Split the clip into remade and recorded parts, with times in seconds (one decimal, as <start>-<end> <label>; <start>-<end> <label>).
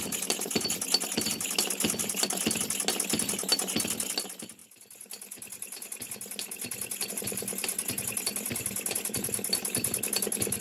0.0-10.6 recorded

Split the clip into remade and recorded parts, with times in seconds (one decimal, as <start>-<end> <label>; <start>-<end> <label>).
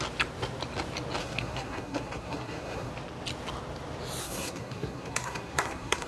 0.0-1.2 recorded; 1.2-2.9 remade; 2.9-4.2 recorded; 4.2-6.1 remade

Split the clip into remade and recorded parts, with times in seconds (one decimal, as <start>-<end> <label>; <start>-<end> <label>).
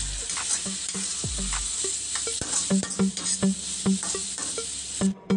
0.0-5.4 recorded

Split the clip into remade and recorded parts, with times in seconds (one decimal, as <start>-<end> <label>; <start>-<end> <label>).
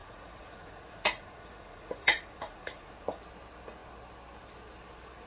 0.0-3.2 remade; 3.2-5.3 recorded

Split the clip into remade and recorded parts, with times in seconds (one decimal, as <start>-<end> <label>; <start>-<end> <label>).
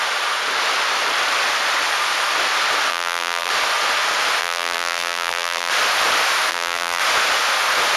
0.0-2.9 recorded; 2.9-3.5 remade; 3.5-4.4 recorded; 4.4-5.7 remade; 5.7-6.5 recorded; 6.5-7.0 remade; 7.0-8.0 recorded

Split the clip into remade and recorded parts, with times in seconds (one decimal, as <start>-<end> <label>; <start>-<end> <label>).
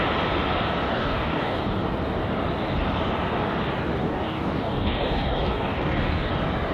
0.0-0.9 recorded; 0.9-1.6 remade; 1.6-4.0 recorded; 4.0-6.3 remade; 6.3-6.7 recorded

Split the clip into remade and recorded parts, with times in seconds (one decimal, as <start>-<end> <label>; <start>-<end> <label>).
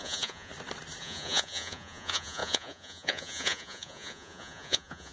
0.0-0.5 remade; 0.5-1.0 recorded; 1.0-5.1 remade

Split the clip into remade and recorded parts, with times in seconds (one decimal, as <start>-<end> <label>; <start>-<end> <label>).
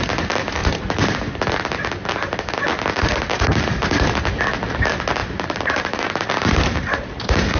0.0-5.2 recorded; 5.2-7.6 remade